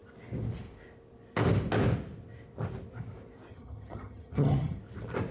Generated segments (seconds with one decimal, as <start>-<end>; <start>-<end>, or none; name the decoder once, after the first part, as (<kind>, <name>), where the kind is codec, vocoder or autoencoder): 3.5-4.8 (vocoder, HiFi-GAN)